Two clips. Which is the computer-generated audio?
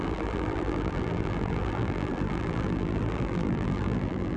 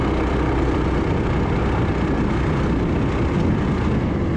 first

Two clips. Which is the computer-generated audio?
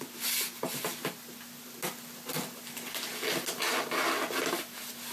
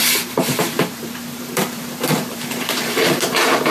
second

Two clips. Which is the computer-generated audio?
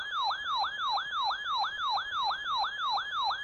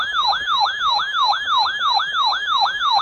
second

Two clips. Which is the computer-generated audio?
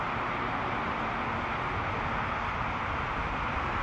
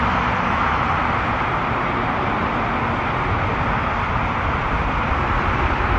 second